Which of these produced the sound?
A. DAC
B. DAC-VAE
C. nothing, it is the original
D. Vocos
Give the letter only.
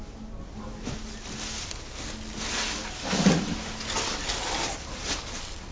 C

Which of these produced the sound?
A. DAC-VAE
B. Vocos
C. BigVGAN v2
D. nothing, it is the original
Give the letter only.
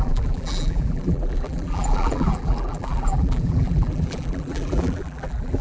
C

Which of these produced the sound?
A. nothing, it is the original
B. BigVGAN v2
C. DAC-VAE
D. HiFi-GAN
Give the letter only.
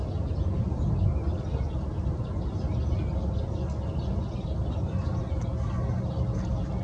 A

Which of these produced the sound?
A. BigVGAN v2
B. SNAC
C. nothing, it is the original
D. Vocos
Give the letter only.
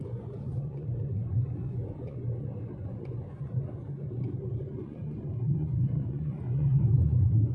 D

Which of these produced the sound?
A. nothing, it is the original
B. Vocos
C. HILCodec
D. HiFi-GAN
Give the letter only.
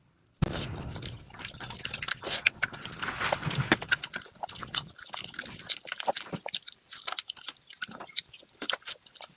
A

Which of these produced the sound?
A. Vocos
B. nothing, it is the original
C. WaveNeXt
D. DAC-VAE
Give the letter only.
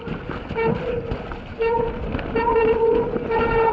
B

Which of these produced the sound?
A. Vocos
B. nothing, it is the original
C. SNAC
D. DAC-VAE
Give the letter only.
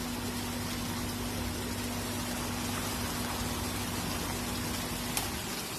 B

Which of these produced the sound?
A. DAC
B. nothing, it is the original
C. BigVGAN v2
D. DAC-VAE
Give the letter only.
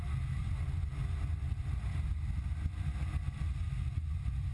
B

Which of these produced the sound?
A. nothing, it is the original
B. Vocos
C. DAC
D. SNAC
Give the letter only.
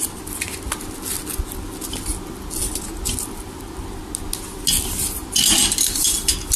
A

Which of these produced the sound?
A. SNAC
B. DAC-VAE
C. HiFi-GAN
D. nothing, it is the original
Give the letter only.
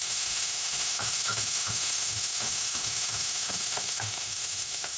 B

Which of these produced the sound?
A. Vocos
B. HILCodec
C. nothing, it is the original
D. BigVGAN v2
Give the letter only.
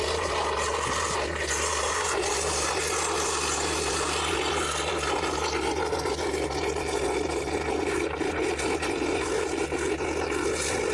C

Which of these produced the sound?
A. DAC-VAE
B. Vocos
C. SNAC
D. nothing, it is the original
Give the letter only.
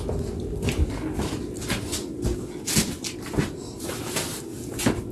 D